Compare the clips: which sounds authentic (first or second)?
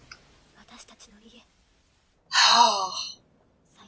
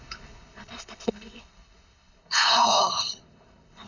first